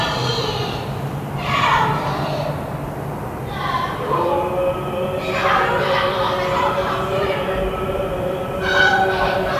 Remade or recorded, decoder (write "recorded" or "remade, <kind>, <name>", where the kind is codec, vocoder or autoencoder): recorded